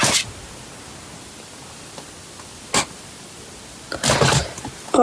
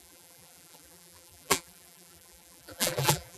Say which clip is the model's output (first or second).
second